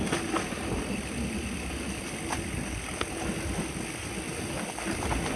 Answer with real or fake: real